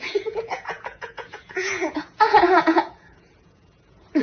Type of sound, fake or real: fake